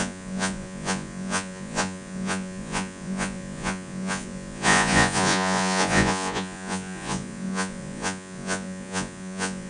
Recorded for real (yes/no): no